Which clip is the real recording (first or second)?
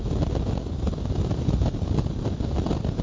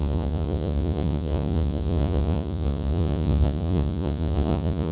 first